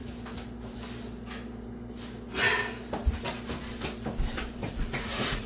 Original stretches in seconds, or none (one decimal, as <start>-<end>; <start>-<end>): 0.0-4.6